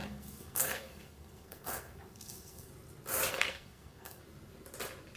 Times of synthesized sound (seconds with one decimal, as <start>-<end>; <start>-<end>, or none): 0.0-2.7; 3.3-4.2